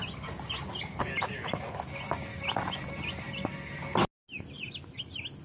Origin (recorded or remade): recorded